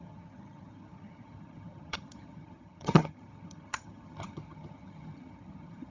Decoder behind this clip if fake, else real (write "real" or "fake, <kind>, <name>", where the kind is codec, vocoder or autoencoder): fake, vocoder, HiFi-GAN